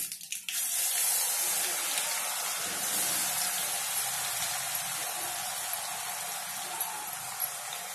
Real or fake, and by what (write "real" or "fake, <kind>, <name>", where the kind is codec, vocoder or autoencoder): real